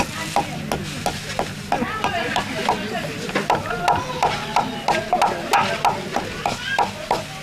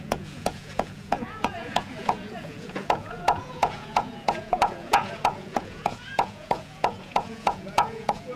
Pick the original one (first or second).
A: first